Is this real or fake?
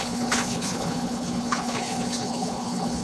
fake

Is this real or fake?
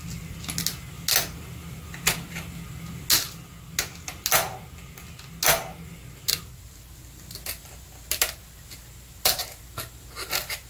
real